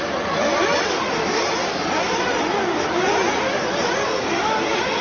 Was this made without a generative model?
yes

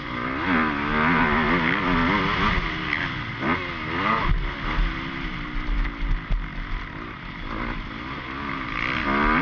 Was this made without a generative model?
yes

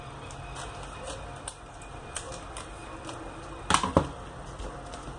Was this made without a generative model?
yes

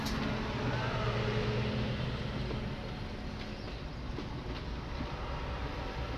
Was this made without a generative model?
yes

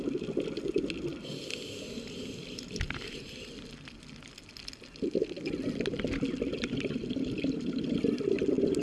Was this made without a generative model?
yes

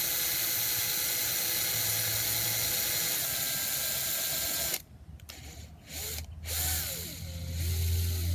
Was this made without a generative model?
yes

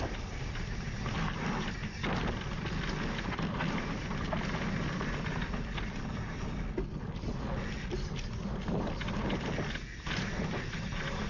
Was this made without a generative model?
yes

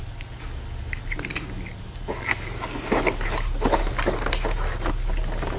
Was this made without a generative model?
yes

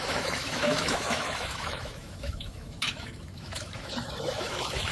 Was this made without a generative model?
no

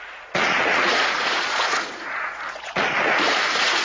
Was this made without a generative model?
no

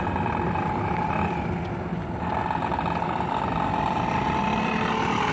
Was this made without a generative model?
yes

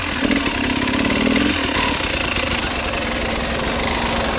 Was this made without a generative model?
yes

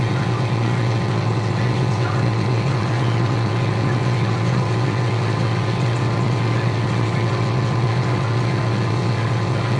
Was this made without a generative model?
no